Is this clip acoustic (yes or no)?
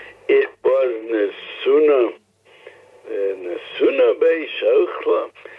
yes